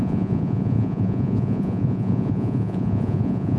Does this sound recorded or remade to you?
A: remade